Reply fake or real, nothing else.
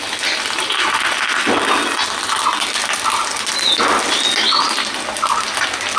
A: real